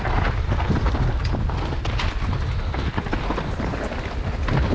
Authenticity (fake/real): real